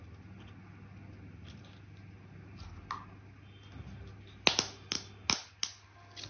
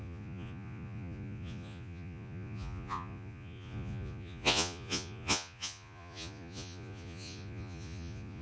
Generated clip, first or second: second